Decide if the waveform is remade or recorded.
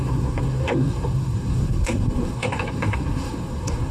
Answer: remade